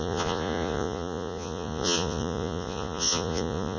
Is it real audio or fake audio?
fake